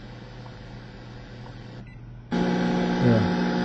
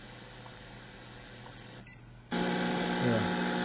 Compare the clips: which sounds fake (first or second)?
second